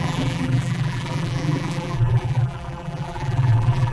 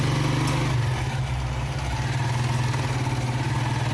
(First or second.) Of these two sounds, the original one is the second